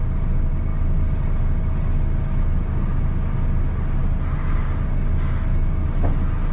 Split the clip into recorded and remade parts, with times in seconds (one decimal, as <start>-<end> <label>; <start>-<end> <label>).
0.0-6.5 recorded